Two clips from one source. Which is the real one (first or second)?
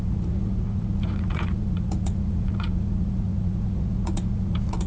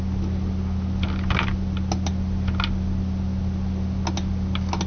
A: second